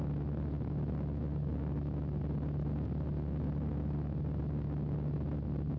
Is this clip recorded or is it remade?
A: recorded